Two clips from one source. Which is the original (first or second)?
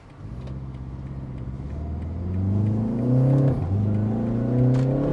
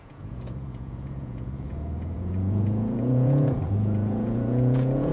first